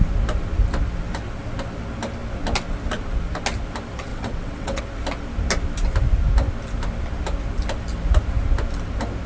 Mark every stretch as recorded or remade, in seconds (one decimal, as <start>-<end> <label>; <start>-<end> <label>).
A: 0.0-4.1 recorded; 4.1-4.8 remade; 4.8-9.3 recorded